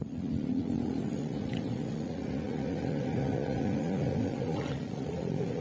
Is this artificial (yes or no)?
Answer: yes